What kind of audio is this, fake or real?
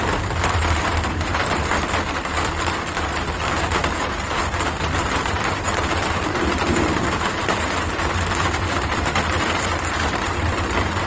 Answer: fake